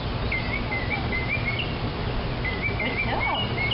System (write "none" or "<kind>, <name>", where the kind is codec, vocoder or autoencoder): none